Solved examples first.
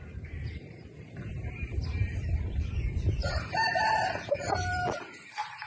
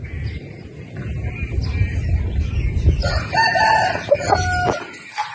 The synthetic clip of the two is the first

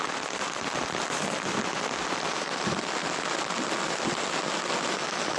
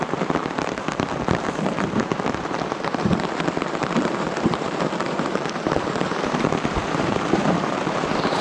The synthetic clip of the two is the second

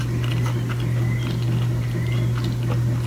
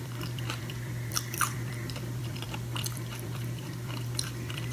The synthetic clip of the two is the second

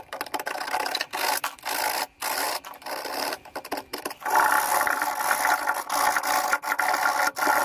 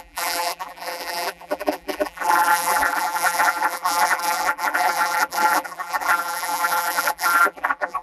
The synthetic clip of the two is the second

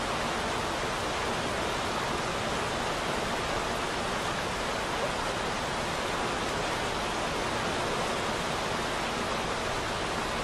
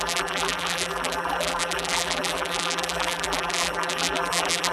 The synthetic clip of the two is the second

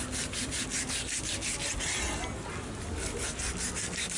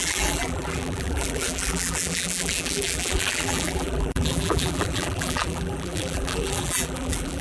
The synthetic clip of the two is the second